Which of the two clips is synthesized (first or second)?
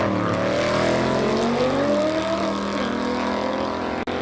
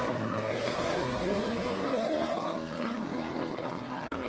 second